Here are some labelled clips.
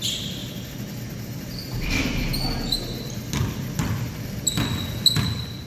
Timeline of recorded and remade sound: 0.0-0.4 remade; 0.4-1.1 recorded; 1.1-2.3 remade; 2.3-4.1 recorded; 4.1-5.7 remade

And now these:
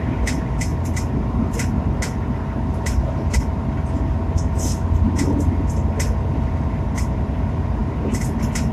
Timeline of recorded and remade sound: 0.0-8.7 recorded

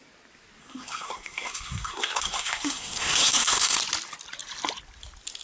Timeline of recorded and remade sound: 0.0-0.6 recorded; 0.6-3.8 remade; 3.8-5.4 recorded

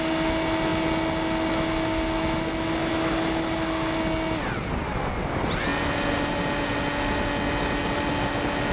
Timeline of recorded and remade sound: 0.0-8.7 recorded

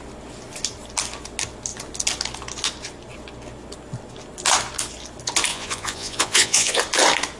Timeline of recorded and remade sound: 0.0-5.5 recorded; 5.5-6.8 remade; 6.8-7.4 recorded

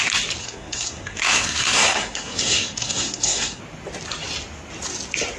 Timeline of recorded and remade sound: 0.0-0.4 recorded; 0.4-3.6 remade; 3.6-5.4 recorded

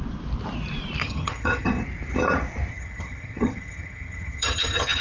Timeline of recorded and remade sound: 0.0-1.0 recorded; 1.0-1.8 remade; 1.8-2.7 recorded; 2.7-5.0 remade